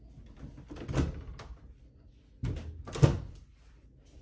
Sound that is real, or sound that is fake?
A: real